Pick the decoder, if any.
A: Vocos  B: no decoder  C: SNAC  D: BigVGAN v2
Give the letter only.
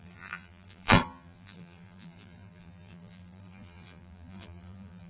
D